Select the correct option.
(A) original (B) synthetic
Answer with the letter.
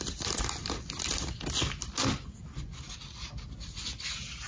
A